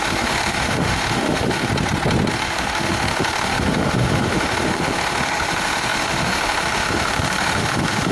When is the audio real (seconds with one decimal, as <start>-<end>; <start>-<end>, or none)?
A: 1.7-2.3